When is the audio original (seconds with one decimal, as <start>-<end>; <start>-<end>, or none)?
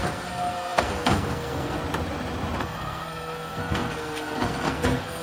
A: 1.8-2.6